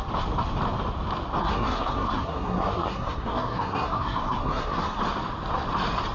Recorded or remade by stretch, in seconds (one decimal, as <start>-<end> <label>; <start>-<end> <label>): 0.0-1.4 recorded; 1.4-5.0 remade; 5.0-6.1 recorded